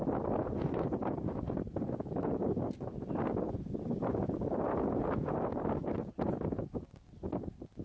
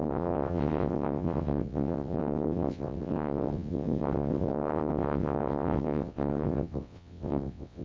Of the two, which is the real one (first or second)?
first